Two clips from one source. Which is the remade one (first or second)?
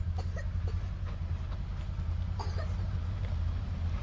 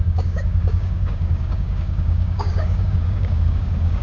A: second